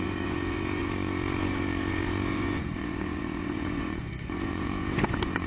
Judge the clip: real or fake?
fake